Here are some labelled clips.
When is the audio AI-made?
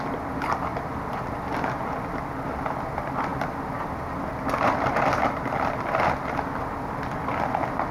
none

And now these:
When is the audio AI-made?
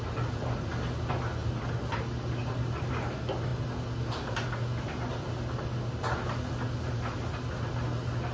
none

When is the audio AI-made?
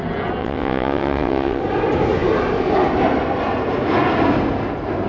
0.4-1.6 (vocoder, WaveNeXt)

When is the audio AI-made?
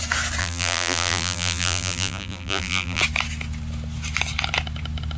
0.4-3.0 (vocoder, BigVGAN v2)